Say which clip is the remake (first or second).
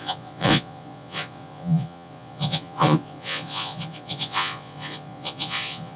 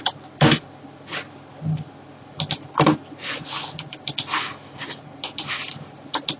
first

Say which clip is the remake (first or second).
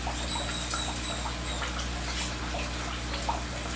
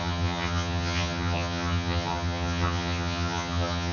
second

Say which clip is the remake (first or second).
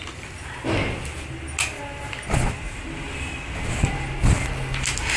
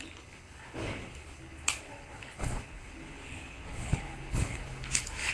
second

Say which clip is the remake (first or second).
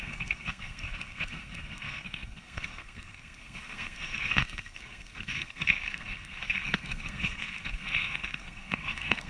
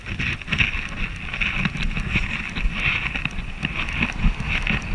first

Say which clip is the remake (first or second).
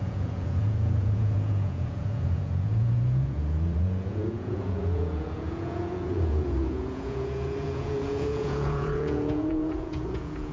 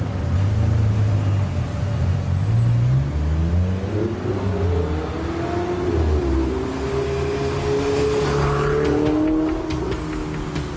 first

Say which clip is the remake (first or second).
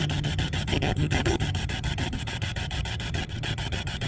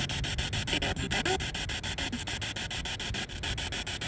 first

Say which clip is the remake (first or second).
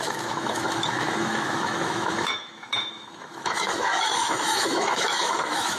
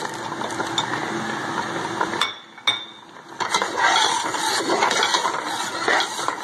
first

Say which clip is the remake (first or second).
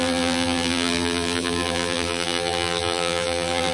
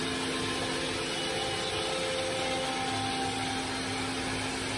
first